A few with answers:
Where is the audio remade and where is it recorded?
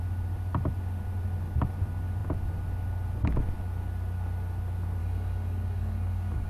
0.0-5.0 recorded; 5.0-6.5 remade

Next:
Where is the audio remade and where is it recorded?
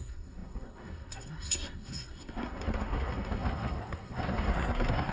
0.0-5.1 remade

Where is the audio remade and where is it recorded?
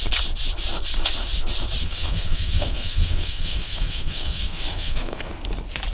0.0-1.8 recorded; 1.8-5.3 remade; 5.3-5.9 recorded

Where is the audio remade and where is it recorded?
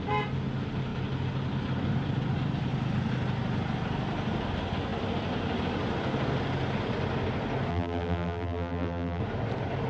0.0-7.7 recorded; 7.7-9.2 remade; 9.2-9.9 recorded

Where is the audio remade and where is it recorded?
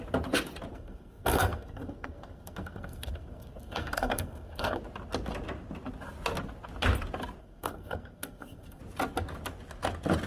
0.0-0.7 recorded; 0.7-4.8 remade; 4.8-7.4 recorded; 7.4-8.8 remade; 8.8-10.3 recorded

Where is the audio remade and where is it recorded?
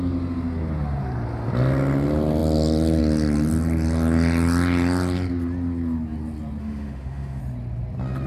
0.0-6.6 recorded; 6.6-7.4 remade; 7.4-8.3 recorded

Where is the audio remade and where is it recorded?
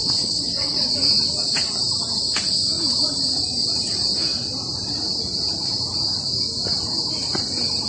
0.0-0.9 remade; 0.9-7.9 recorded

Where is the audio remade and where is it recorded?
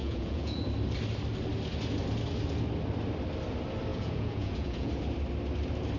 0.0-0.6 remade; 0.6-3.9 recorded; 3.9-4.9 remade; 4.9-6.0 recorded